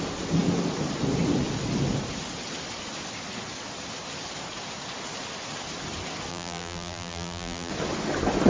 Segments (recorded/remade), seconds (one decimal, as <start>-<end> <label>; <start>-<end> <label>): 0.0-6.3 recorded; 6.3-7.7 remade; 7.7-8.5 recorded